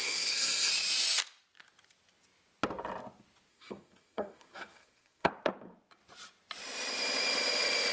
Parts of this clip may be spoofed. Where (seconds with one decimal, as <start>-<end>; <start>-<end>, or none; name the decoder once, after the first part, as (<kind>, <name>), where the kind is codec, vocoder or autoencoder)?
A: 0.0-0.7 (codec, SNAC); 3.5-5.3